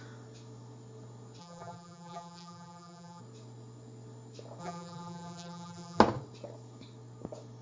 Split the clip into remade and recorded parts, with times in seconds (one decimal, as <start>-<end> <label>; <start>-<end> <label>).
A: 0.0-1.4 recorded; 1.4-3.2 remade; 3.2-4.6 recorded; 4.6-6.0 remade; 6.0-7.6 recorded